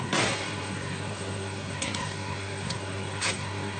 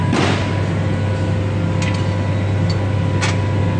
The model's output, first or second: first